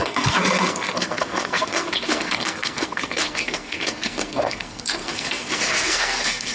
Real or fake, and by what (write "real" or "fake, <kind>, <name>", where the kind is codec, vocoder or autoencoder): fake, codec, SNAC